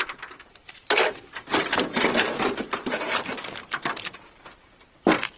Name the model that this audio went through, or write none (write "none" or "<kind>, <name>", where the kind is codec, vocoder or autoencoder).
vocoder, BigVGAN v2